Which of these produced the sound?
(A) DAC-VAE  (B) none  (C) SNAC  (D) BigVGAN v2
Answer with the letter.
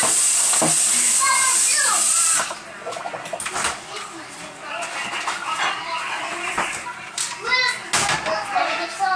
B